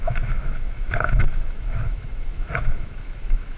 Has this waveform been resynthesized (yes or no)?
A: yes